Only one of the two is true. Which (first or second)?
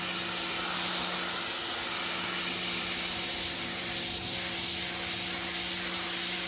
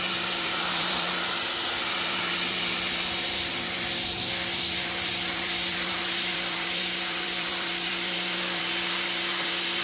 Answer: first